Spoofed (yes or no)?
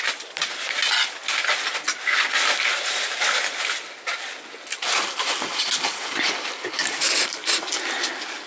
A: no